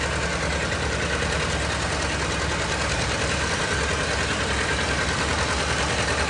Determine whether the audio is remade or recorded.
recorded